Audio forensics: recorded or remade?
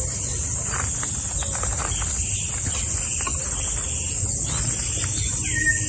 recorded